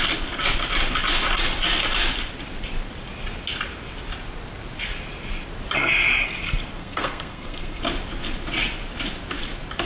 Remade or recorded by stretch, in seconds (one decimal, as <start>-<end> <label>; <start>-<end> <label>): 0.0-6.8 recorded; 6.8-7.8 remade; 7.8-9.9 recorded